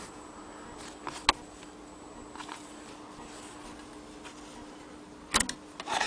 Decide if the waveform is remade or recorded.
recorded